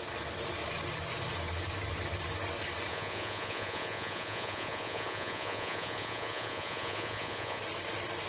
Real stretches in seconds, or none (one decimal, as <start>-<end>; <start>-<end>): 0.0-2.9; 7.6-8.3